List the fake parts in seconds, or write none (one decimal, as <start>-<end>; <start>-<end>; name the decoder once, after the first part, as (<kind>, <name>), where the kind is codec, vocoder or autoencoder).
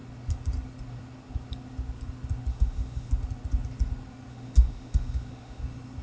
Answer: 2.5-3.1 (autoencoder, DAC-VAE); 4.3-5.6